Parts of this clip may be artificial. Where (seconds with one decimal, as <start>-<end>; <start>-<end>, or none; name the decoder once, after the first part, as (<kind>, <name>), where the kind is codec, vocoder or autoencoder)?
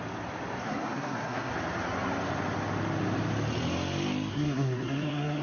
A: 0.6-1.5 (codec, SNAC); 4.3-5.4